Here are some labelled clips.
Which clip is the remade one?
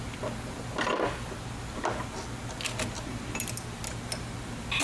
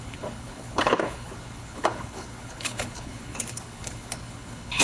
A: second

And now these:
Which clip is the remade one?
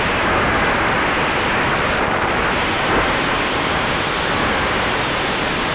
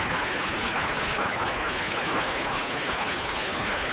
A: second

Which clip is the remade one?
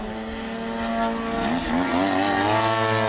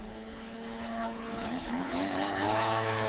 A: second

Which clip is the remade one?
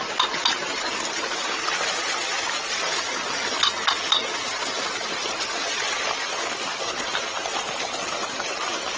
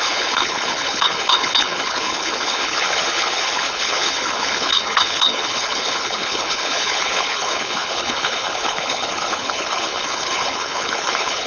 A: second